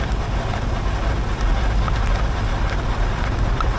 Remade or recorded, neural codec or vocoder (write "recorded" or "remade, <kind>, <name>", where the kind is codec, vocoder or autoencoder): recorded